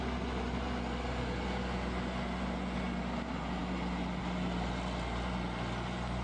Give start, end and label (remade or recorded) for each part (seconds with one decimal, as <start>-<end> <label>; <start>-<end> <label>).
0.0-6.2 recorded